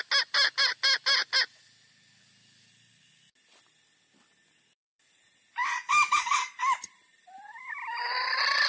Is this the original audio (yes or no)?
yes